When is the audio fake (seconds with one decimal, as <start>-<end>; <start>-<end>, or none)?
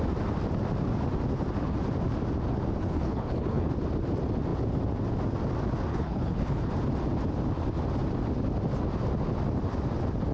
2.8-3.7; 5.9-6.7